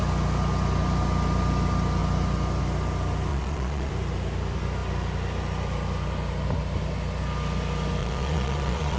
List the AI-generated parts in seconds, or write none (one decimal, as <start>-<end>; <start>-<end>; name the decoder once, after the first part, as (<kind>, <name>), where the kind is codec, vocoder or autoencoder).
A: 3.3-3.9 (vocoder, Vocos); 8.0-9.0